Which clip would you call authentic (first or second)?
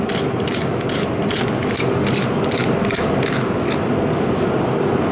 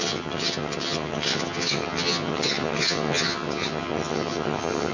first